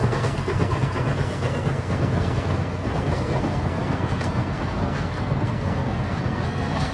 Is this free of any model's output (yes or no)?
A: no